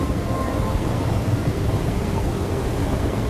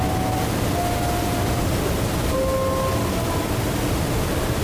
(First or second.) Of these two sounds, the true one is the second